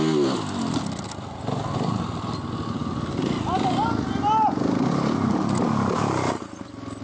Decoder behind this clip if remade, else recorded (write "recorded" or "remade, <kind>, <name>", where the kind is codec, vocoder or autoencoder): recorded